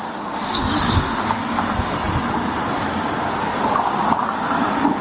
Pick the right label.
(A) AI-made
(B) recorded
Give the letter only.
B